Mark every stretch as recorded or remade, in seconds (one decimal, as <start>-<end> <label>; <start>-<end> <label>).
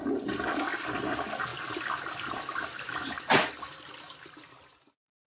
0.0-5.3 recorded